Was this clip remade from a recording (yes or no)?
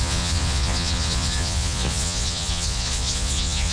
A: yes